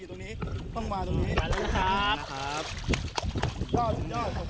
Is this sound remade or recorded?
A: recorded